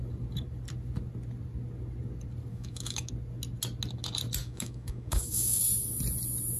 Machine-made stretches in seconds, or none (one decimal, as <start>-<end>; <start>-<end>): 2.5-3.1; 4.4-5.6

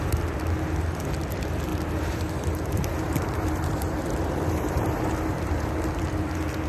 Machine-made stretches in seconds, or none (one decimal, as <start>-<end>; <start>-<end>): 1.7-5.7

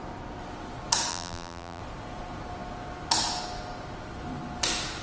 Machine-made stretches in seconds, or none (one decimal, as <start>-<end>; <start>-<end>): 1.1-1.8

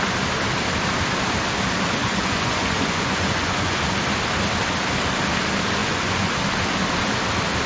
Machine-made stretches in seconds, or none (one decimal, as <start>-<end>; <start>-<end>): 2.0-3.8; 5.8-6.3